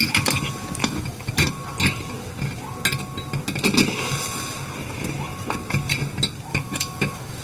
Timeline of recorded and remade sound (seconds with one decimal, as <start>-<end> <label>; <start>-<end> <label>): 0.0-0.8 recorded; 0.8-1.3 remade; 1.3-6.5 recorded; 6.5-7.4 remade